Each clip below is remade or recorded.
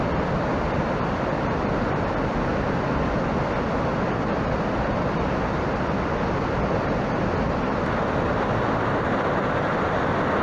recorded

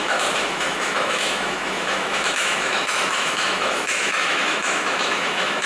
remade